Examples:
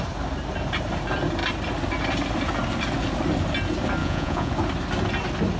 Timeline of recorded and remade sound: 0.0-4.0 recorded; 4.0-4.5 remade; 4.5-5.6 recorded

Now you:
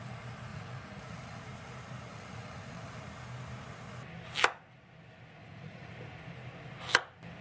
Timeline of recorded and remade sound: 0.0-0.5 recorded; 0.5-1.4 remade; 1.4-2.1 recorded; 2.1-3.0 remade; 3.0-5.4 recorded; 5.4-5.9 remade; 5.9-7.4 recorded

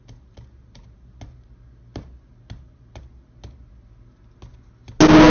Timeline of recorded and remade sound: 0.0-5.3 recorded

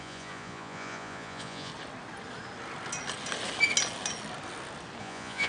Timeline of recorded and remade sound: 0.0-1.7 remade; 1.7-5.0 recorded; 5.0-5.5 remade

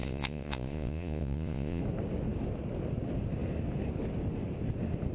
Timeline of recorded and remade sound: 0.0-1.8 remade; 1.8-5.1 recorded

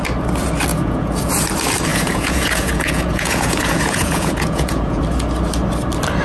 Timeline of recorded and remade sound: 0.0-0.7 recorded; 0.7-1.3 remade; 1.3-1.9 recorded; 1.9-5.0 remade; 5.0-6.2 recorded